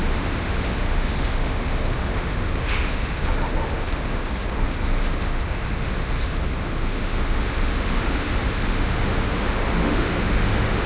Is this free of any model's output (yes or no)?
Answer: no